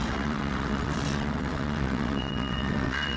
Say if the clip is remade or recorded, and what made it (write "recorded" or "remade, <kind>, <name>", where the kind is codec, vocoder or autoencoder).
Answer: remade, vocoder, WaveNeXt